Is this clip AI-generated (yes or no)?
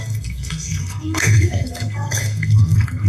yes